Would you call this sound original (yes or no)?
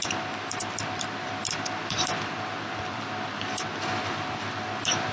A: no